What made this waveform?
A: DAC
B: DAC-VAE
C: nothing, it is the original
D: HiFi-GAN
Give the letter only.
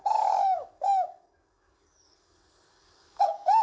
A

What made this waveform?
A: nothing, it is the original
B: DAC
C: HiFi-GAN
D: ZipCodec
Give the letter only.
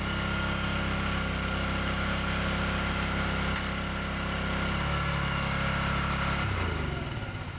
A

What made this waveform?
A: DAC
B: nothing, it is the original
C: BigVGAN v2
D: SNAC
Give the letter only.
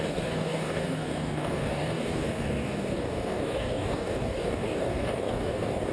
A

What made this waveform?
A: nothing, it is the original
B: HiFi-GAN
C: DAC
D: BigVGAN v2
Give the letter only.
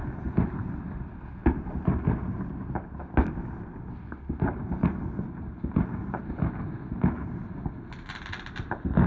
A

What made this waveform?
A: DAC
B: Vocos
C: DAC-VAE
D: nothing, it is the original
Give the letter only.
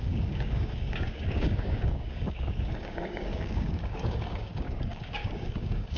A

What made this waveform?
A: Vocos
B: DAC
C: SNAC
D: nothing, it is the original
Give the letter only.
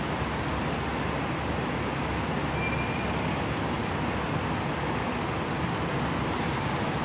D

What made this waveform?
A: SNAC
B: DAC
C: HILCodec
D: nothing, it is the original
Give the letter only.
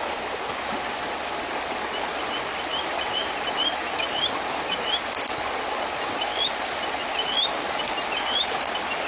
D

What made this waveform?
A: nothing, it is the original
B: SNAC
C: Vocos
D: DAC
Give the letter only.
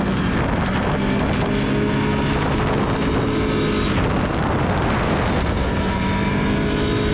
A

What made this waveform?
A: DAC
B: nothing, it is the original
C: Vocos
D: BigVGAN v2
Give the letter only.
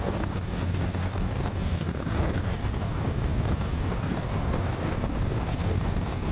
A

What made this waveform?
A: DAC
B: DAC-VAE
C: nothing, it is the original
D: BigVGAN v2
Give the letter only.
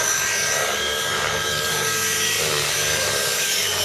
A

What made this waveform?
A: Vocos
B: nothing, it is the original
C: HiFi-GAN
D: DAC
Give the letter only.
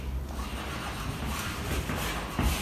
B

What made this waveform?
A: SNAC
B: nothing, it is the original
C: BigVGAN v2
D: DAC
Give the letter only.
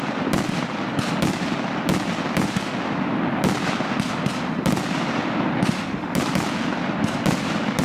B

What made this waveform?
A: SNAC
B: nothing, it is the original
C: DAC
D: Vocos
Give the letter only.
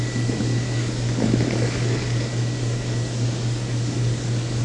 C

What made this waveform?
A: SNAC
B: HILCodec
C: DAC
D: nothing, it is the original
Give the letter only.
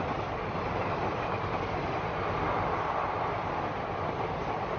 D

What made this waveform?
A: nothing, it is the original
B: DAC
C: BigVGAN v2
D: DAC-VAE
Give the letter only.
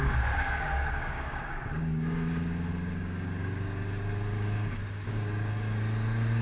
B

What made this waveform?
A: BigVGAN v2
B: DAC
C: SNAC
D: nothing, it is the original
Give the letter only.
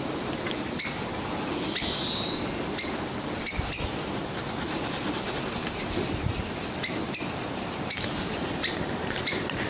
D